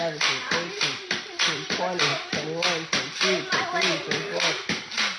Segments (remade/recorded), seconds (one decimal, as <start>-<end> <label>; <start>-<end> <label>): 0.0-5.2 recorded